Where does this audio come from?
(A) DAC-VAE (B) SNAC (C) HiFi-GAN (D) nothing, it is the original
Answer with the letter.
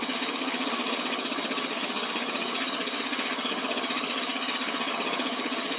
C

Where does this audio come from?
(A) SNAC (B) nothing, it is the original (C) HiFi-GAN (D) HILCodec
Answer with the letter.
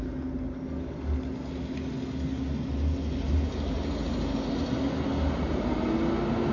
B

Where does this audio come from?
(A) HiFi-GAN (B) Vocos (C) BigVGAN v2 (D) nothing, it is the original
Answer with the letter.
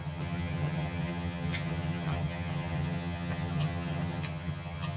A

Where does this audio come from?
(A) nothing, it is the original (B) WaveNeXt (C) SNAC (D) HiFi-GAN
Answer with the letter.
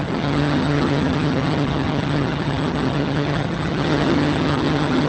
D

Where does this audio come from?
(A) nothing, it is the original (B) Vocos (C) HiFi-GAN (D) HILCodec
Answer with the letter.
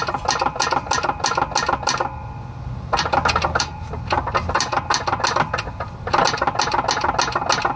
A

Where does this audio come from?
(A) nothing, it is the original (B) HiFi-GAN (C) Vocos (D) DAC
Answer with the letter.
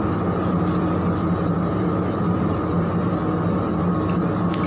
A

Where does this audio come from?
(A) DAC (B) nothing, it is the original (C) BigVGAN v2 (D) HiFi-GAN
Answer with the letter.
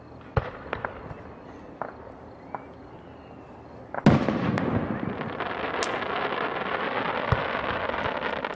B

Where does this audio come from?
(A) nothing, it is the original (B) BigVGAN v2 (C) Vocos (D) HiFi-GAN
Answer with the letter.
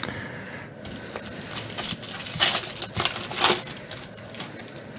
A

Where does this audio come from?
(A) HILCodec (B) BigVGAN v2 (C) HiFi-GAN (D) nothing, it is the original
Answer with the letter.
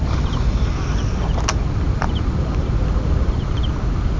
D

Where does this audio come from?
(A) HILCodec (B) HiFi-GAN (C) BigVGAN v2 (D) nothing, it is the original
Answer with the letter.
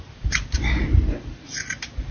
D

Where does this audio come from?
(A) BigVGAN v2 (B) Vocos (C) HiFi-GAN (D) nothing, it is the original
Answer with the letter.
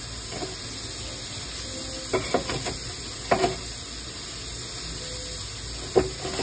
D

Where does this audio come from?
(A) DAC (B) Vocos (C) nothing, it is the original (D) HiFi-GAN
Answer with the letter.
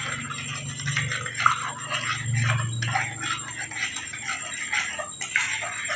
C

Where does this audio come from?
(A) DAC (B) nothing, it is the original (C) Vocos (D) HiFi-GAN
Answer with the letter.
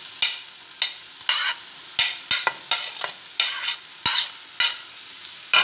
B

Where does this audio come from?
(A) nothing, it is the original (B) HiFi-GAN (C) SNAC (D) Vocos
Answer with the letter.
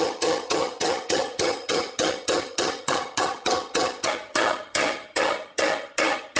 B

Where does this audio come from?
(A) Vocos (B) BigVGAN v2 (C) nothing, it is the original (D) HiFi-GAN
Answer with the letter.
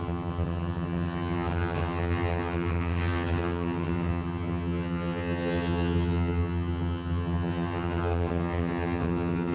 D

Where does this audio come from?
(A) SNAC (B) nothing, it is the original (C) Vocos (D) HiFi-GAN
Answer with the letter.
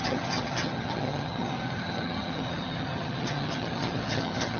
D